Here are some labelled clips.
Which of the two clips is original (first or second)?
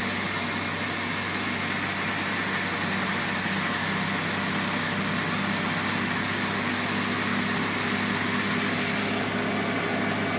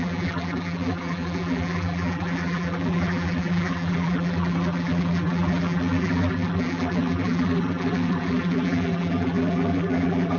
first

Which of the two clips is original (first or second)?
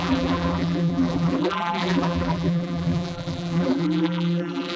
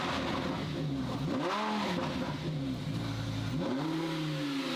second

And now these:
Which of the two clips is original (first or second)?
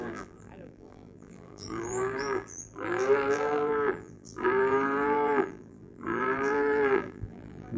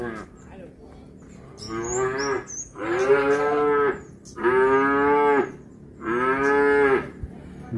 second